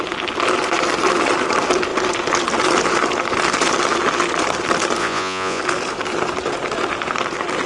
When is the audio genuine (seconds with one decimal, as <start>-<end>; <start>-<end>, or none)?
0.0-5.0; 5.6-7.7